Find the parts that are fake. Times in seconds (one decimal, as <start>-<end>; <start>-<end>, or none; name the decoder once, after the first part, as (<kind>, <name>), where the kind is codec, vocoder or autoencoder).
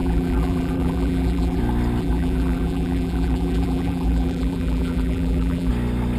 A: 0.0-1.6 (vocoder, BigVGAN v2); 2.0-5.7